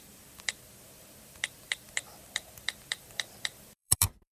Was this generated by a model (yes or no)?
yes